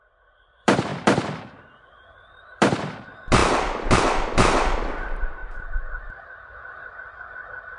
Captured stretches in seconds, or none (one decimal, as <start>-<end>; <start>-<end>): none